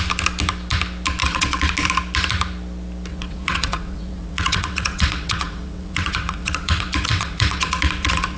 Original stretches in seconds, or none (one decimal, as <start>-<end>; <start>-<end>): 0.0-1.2; 1.7-3.1